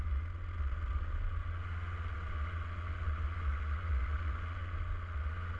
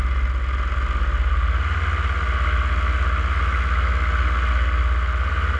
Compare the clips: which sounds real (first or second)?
second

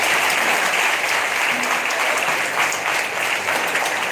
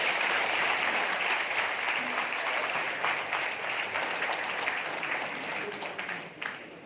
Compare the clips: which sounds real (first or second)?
first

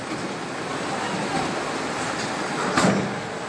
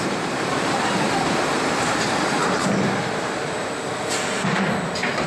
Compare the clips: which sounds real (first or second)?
first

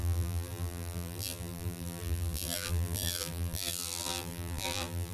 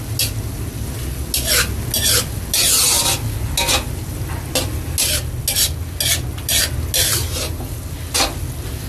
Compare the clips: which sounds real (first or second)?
second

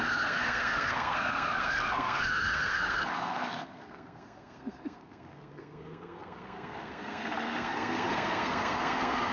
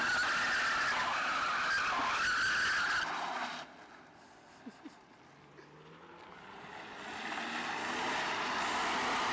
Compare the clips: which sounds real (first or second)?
second